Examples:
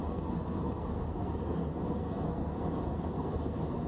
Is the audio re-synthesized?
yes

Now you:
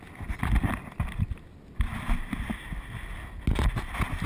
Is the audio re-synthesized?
no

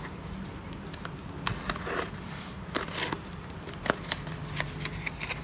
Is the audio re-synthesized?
no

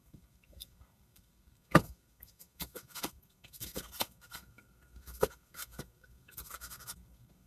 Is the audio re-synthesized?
yes